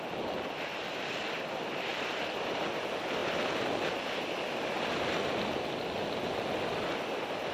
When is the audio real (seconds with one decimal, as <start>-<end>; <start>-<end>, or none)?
0.0-1.9; 2.6-3.2; 5.0-7.5